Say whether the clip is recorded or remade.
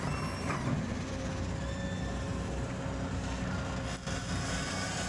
recorded